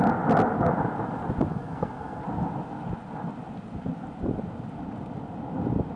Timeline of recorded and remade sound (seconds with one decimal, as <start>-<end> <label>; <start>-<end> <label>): 0.0-1.5 recorded; 1.5-2.2 remade; 2.2-6.0 recorded